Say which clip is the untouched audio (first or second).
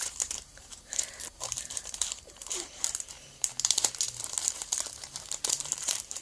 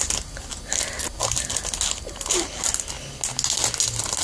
second